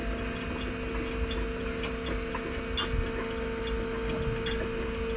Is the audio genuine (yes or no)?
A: yes